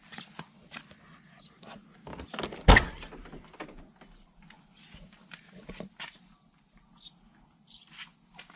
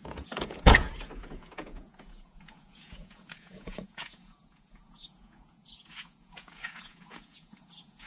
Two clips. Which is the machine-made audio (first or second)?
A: second